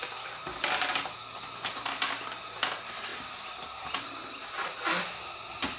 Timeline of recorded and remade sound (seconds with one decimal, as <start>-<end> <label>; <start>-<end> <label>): 0.0-5.8 recorded